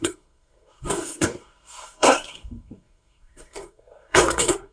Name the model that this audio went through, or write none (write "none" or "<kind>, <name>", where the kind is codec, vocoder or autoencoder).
codec, SNAC